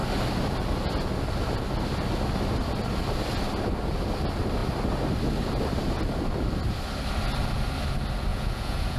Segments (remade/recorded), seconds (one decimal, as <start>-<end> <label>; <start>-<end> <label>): 0.0-8.3 recorded; 8.3-9.0 remade